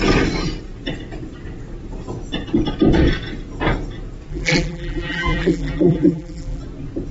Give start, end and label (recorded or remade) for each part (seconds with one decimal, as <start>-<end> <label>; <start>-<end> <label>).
0.0-4.3 recorded; 4.3-6.6 remade; 6.6-7.1 recorded